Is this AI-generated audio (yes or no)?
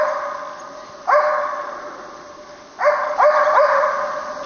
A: no